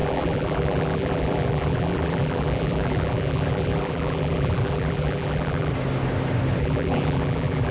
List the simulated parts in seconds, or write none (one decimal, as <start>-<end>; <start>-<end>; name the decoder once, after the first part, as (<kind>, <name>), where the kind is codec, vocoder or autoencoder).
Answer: 0.0-5.7 (vocoder, BigVGAN v2); 6.6-7.7